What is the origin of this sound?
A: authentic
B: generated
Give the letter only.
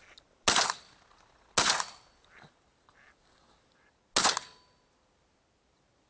A